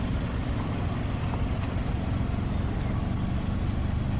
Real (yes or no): yes